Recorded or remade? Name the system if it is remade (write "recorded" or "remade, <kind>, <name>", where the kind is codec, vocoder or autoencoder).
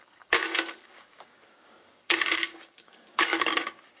remade, codec, DAC